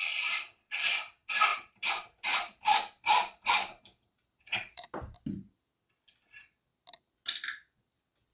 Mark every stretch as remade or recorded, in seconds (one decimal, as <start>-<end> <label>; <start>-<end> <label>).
0.0-1.5 recorded; 1.5-4.9 remade; 4.9-8.3 recorded